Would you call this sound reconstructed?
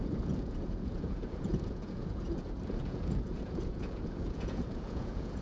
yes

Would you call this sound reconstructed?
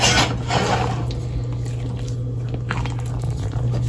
no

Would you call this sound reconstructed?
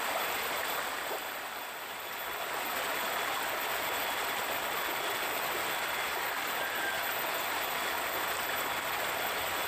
no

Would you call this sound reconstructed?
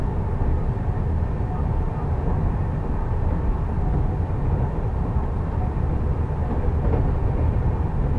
no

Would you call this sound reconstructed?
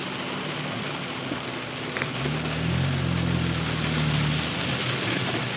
no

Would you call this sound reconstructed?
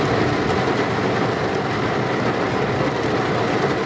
no